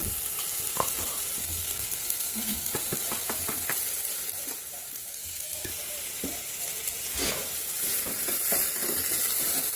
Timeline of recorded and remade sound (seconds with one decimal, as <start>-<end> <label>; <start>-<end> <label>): 0.0-1.4 recorded; 1.4-2.7 remade; 2.7-5.0 recorded; 5.0-5.7 remade; 5.7-9.8 recorded